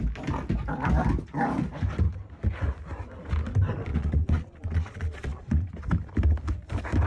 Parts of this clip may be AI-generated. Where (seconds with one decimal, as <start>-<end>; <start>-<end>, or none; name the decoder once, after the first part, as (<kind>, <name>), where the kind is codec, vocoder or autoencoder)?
3.9-5.7 (vocoder, Vocos)